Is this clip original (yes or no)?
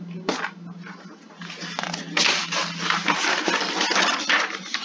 yes